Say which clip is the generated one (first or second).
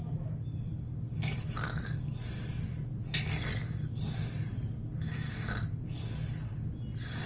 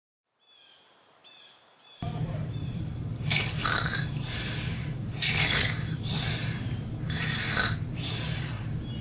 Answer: second